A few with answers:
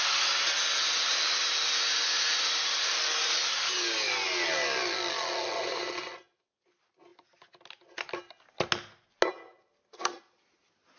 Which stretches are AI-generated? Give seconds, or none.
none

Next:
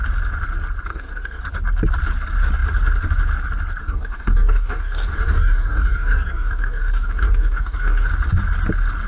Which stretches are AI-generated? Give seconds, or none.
0.9-1.4 (codec, DAC); 3.8-8.1

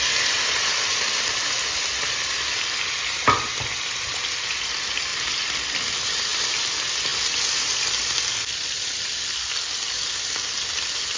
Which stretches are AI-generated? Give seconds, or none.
none